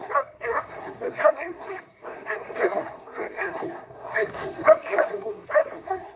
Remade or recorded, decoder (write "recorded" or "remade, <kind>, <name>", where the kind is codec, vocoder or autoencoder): remade, codec, SNAC